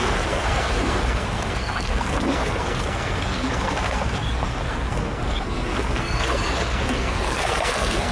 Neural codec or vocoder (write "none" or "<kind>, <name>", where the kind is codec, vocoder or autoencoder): codec, SNAC